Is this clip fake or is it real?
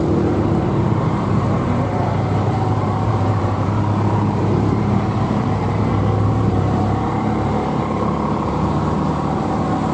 fake